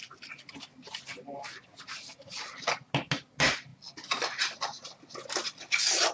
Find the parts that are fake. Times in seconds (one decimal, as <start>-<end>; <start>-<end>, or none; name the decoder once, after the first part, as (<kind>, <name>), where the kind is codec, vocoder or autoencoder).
none